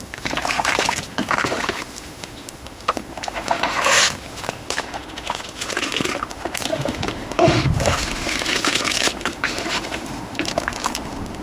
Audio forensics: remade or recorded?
remade